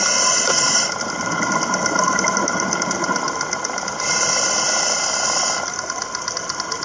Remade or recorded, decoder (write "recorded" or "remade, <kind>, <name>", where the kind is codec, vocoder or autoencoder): recorded